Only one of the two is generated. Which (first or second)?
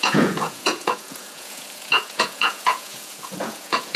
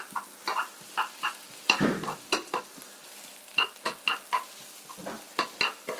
first